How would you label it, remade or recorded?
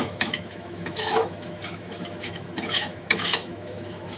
remade